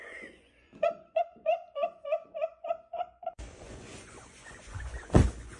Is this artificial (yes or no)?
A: yes